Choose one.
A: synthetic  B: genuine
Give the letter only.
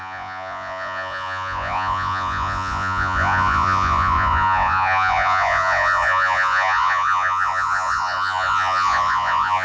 A